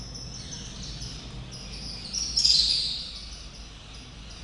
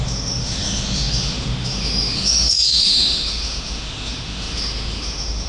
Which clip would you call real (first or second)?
first